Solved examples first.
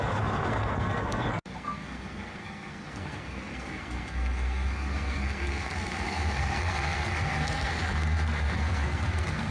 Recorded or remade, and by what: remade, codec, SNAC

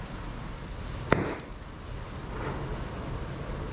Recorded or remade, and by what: recorded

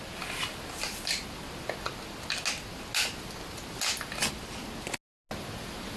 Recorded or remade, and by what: recorded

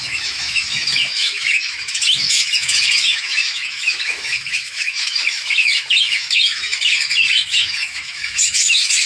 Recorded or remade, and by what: remade, autoencoder, DAC-VAE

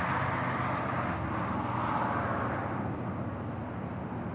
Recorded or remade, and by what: recorded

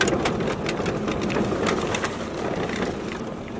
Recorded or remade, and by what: recorded